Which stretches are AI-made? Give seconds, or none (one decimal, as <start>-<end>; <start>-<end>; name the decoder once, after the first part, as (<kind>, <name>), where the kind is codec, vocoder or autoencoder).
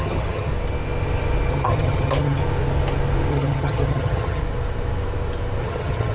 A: 0.0-0.5 (vocoder, HiFi-GAN); 1.5-2.4; 3.3-4.4; 5.6-6.1